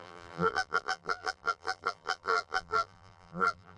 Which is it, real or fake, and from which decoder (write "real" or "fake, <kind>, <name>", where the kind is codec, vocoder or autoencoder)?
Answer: fake, vocoder, BigVGAN v2